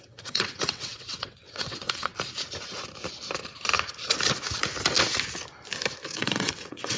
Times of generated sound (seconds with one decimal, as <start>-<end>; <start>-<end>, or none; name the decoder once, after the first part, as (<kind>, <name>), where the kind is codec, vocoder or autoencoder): 0.0-2.1 (vocoder, WaveNeXt); 6.2-7.0

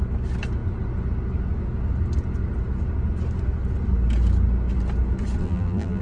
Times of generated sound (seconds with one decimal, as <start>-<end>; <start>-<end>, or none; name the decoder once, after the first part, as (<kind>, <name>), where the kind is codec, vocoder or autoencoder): 5.4-6.0 (vocoder, BigVGAN v2)

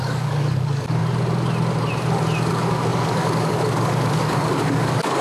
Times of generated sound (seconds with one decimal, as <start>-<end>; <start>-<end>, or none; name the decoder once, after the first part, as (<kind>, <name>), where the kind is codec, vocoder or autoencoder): 0.0-1.0 (codec, DAC); 2.5-5.2

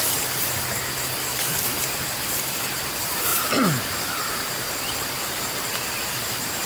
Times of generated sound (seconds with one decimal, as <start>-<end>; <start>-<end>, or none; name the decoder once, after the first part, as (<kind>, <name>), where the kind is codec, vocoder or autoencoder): 1.3-2.1 (vocoder, BigVGAN v2); 3.3-6.7

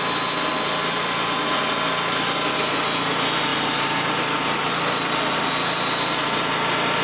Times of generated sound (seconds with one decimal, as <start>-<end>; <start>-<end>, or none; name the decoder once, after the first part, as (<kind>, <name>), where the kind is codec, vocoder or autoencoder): none

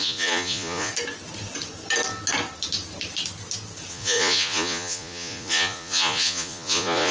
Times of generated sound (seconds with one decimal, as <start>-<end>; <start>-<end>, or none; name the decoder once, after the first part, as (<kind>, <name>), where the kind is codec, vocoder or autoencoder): 0.0-0.9 (vocoder, Vocos); 3.9-7.1